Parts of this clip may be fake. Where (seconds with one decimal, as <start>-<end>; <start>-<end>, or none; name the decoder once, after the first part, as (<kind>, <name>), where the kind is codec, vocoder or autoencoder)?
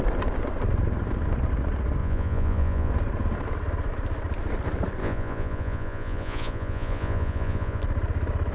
2.0-2.9 (vocoder, Vocos); 5.0-7.8